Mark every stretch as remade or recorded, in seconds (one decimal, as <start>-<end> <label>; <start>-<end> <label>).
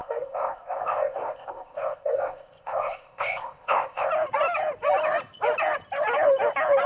0.0-4.1 remade; 4.1-6.9 recorded